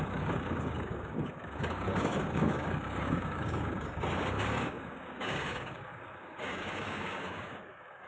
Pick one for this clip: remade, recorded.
remade